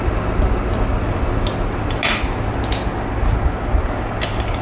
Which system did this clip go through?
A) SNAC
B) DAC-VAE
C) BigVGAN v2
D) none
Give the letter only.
D